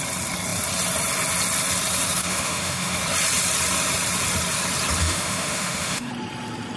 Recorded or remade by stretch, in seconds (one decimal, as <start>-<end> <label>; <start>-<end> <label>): 0.0-2.2 recorded; 2.2-3.0 remade; 3.0-5.0 recorded; 5.0-6.1 remade; 6.1-6.8 recorded